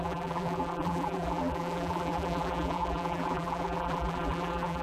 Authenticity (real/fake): fake